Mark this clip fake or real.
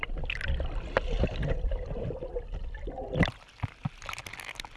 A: real